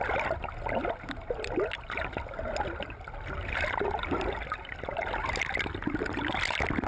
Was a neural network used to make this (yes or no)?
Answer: no